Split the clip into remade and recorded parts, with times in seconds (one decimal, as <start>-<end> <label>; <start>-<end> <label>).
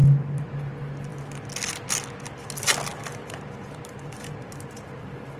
0.0-0.5 remade; 0.5-2.9 recorded; 2.9-5.4 remade